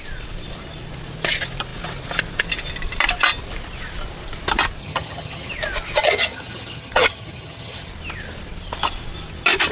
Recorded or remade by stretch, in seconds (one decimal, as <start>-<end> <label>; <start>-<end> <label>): 0.0-4.8 recorded; 4.8-5.5 remade; 5.5-6.0 recorded; 6.0-7.9 remade; 7.9-9.7 recorded